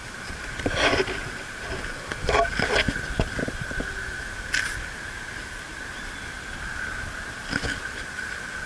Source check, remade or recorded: recorded